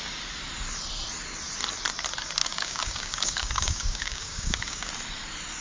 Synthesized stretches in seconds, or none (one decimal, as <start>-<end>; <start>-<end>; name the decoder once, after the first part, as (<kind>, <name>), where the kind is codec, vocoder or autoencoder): 2.4-4.9 (codec, DAC)